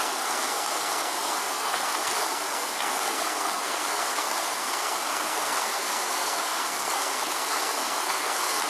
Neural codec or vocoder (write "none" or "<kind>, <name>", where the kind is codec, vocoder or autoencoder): codec, SNAC